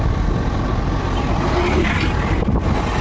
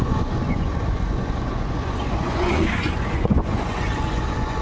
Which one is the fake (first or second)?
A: second